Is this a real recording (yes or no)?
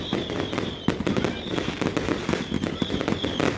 yes